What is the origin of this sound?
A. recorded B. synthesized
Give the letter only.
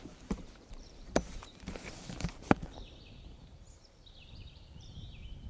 B